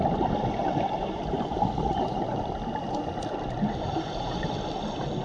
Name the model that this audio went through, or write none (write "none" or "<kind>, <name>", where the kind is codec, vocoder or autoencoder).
none